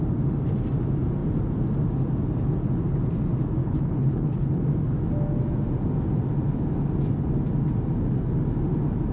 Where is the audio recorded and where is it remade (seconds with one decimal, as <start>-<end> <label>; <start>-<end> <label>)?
0.0-3.6 recorded; 3.6-4.6 remade; 4.6-9.1 recorded

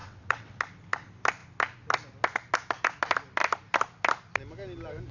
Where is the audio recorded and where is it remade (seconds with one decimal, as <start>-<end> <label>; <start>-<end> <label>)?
0.0-0.6 remade; 0.6-5.1 recorded